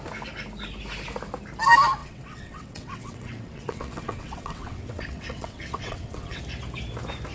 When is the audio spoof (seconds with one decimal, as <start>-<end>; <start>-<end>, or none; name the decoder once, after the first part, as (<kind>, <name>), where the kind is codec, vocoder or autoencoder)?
2.0-6.4 (vocoder, WaveNeXt)